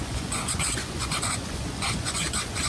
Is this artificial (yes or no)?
yes